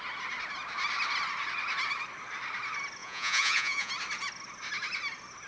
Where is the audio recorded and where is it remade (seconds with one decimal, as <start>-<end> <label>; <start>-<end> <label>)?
0.0-3.0 recorded; 3.0-3.9 remade; 3.9-5.5 recorded